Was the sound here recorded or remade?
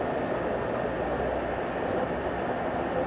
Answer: recorded